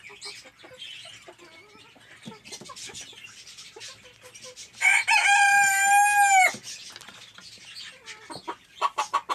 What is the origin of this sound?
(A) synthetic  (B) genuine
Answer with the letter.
B